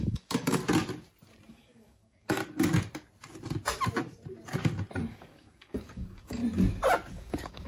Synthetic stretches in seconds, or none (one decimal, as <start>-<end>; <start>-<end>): 0.0-0.6; 1.5-2.4; 5.1-6.4; 7.1-7.7